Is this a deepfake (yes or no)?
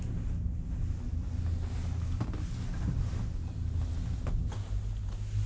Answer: no